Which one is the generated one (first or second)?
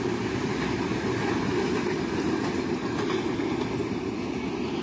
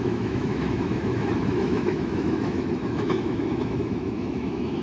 second